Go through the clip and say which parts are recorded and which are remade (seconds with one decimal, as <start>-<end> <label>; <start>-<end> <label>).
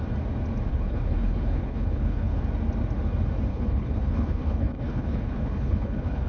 0.0-0.7 recorded; 0.7-2.4 remade; 2.4-3.5 recorded; 3.5-6.3 remade